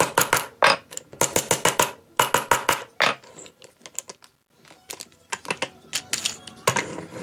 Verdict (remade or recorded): recorded